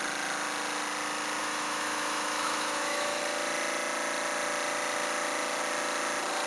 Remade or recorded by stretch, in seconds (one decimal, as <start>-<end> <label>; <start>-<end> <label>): 0.0-1.4 recorded; 1.4-3.2 remade; 3.2-6.5 recorded